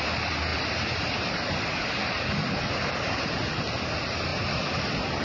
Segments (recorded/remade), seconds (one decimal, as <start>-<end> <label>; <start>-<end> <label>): 0.0-5.2 recorded